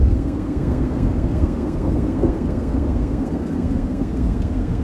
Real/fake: fake